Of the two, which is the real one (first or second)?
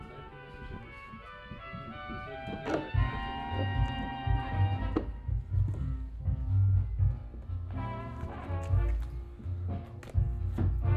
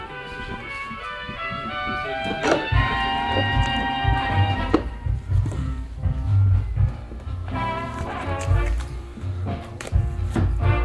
first